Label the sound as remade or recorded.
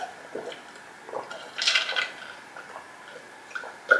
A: recorded